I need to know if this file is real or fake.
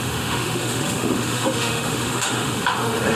fake